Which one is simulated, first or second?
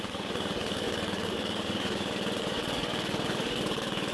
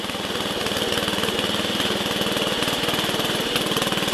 first